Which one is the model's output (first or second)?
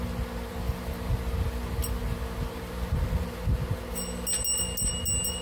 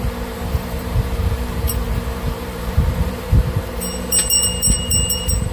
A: second